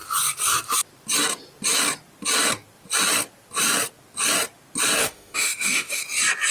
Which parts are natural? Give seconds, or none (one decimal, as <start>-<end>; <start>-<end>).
0.0-5.0; 6.0-6.5